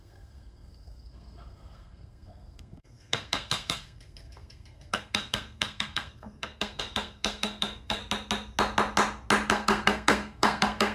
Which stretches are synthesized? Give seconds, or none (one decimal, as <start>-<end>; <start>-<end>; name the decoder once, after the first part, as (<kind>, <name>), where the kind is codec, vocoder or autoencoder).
0.0-8.0 (codec, SNAC); 9.5-10.9